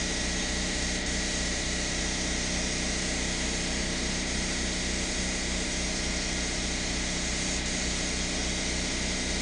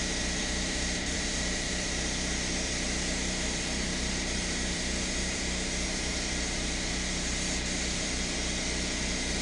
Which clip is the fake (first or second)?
second